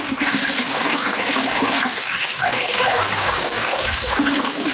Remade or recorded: remade